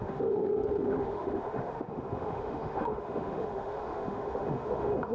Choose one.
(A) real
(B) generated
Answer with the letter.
B